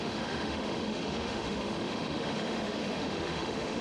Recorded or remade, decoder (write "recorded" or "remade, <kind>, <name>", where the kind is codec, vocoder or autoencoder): remade, autoencoder, DAC-VAE